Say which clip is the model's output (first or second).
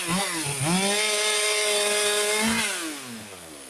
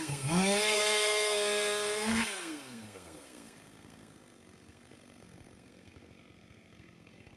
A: second